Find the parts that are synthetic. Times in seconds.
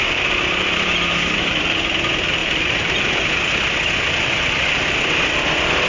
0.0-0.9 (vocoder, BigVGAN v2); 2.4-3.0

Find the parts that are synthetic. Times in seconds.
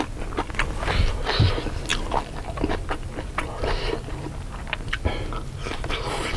1.9-4.8 (vocoder, BigVGAN v2)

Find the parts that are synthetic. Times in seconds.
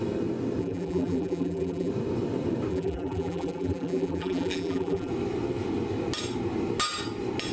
0.6-1.9 (vocoder, BigVGAN v2); 2.7-5.1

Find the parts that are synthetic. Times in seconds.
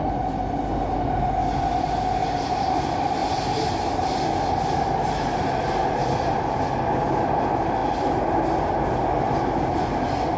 2.2-2.8 (vocoder, BigVGAN v2); 4.9-6.6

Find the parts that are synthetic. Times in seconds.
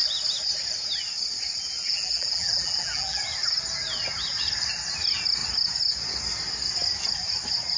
1.8-3.2 (vocoder, BigVGAN v2)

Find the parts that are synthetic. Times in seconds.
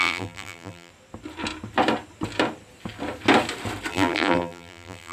0.0-0.9 (vocoder, BigVGAN v2); 3.9-5.1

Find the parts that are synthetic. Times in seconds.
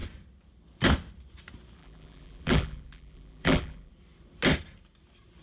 1.8-3.9 (vocoder, BigVGAN v2)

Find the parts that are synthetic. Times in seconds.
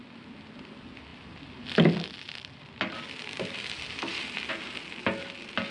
1.1-4.5 (vocoder, BigVGAN v2)